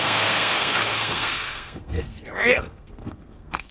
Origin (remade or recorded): remade